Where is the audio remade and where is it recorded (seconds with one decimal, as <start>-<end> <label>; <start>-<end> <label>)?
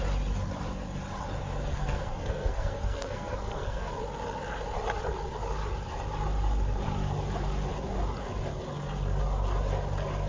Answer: 0.0-1.7 recorded; 1.7-3.9 remade; 3.9-10.3 recorded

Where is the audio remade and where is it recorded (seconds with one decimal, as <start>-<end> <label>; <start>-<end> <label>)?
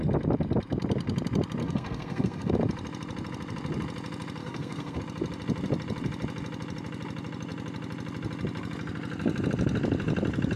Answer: 0.0-1.6 recorded; 1.6-2.5 remade; 2.5-4.4 recorded; 4.4-5.0 remade; 5.0-10.6 recorded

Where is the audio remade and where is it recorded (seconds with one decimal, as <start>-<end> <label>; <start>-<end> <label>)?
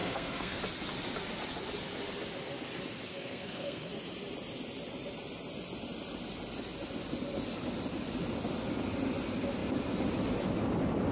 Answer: 0.0-0.6 remade; 0.6-3.1 recorded; 3.1-3.9 remade; 3.9-11.1 recorded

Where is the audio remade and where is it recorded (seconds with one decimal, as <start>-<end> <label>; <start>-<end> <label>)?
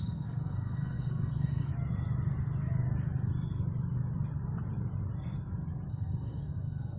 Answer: 0.0-1.7 remade; 1.7-5.9 recorded; 5.9-7.0 remade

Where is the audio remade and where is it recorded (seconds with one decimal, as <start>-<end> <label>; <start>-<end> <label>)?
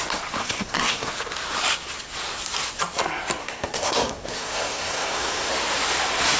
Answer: 0.0-0.4 recorded; 0.4-1.1 remade; 1.1-3.4 recorded; 3.4-5.5 remade; 5.5-6.4 recorded